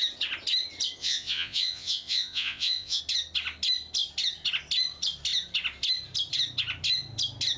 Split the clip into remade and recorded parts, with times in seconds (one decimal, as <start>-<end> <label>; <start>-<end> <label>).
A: 0.0-1.0 recorded; 1.0-3.0 remade; 3.0-7.6 recorded